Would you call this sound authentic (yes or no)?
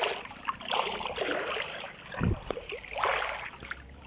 yes